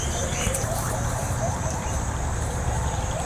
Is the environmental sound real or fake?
fake